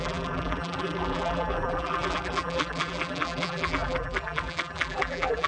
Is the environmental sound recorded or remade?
remade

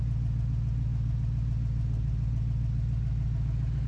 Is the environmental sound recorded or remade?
recorded